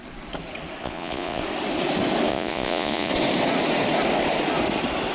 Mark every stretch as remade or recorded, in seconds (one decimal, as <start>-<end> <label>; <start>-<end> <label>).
0.0-0.8 recorded; 0.8-1.4 remade; 1.4-2.3 recorded; 2.3-3.1 remade; 3.1-5.1 recorded